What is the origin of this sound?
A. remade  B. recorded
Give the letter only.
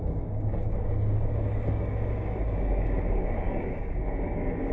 A